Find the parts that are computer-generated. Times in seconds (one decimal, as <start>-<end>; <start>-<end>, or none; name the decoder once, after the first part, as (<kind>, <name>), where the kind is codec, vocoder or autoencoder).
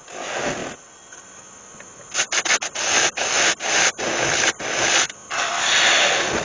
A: none